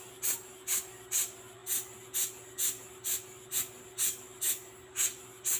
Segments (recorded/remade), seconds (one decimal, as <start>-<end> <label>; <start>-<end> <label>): 0.0-5.6 recorded